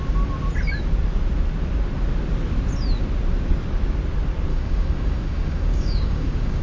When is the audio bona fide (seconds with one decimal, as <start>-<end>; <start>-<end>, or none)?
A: 0.0-4.5